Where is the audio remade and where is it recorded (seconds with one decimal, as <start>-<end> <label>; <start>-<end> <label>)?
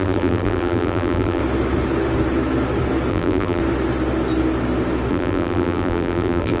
0.0-1.4 remade; 1.4-3.1 recorded; 3.1-3.6 remade; 3.6-5.1 recorded; 5.1-6.6 remade